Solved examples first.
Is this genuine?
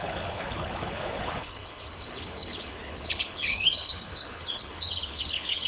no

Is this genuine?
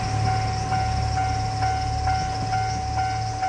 yes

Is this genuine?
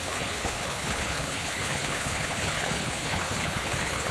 no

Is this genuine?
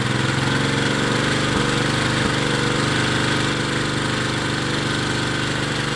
yes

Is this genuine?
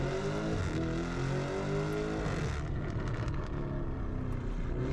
yes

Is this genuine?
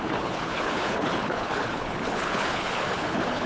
no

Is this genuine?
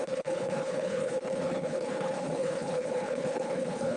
no